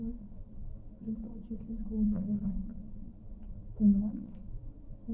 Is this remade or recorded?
remade